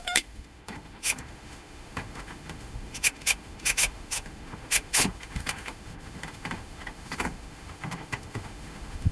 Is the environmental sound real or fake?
fake